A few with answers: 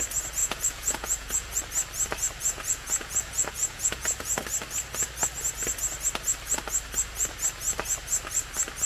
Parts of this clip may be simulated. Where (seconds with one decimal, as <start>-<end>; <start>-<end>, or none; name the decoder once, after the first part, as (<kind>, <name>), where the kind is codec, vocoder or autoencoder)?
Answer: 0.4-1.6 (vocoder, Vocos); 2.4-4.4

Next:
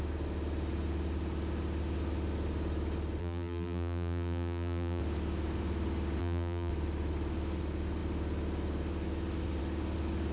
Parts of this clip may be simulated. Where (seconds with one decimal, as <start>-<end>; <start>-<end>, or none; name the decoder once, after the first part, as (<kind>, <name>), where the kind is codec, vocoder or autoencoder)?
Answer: 3.2-5.0 (vocoder, BigVGAN v2); 6.2-6.7

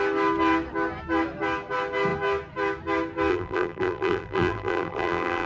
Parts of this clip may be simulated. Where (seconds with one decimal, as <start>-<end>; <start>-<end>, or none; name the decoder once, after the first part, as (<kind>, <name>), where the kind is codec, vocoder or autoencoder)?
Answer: 3.3-5.5 (vocoder, BigVGAN v2)

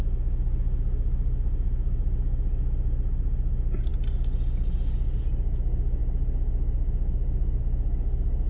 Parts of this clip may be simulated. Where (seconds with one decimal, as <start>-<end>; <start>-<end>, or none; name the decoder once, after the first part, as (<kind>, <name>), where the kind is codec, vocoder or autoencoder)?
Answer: none